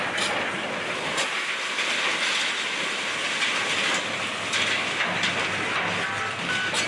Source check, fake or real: real